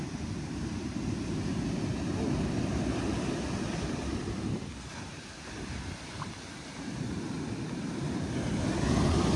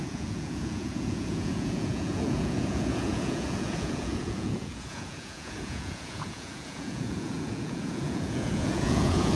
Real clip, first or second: first